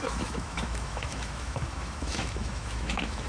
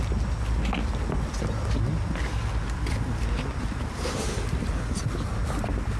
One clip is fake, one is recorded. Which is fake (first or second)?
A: first